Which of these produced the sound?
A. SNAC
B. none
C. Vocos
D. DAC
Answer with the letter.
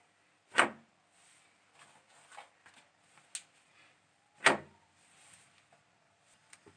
B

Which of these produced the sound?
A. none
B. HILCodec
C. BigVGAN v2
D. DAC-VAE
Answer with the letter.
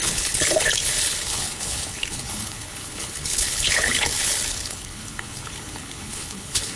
B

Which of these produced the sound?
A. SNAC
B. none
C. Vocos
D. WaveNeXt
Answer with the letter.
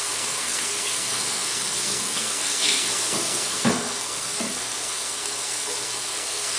A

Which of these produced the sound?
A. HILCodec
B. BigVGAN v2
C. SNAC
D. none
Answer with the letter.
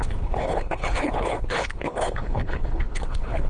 A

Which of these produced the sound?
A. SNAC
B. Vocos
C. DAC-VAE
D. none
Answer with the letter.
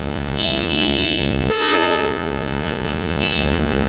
B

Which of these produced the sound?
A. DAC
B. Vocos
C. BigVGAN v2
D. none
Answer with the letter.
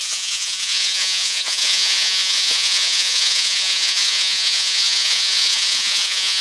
B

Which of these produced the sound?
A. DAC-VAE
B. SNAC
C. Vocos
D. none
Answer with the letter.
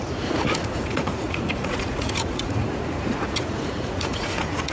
C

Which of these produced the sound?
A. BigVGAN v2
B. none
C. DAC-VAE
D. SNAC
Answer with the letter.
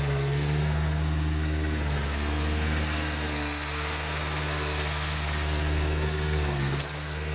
D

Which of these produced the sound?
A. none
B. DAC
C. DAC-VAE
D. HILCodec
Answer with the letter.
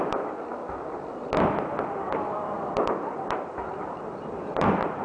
A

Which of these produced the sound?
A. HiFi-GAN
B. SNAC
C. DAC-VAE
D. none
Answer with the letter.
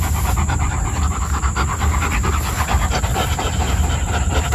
D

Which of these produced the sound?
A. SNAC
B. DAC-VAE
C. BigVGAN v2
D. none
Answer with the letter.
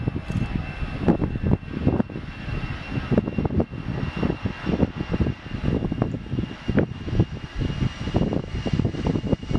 D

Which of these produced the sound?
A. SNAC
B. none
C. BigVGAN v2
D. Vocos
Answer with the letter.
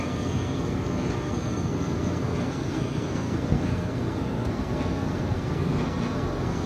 A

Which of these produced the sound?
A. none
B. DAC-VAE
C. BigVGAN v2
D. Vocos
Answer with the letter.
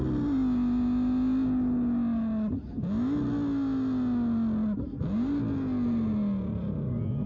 A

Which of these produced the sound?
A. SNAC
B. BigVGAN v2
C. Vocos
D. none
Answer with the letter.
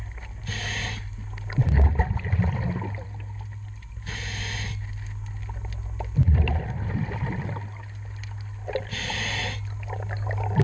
D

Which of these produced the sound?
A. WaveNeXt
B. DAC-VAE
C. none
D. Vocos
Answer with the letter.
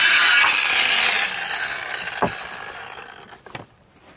C